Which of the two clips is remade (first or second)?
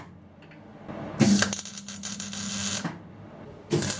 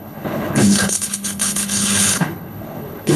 second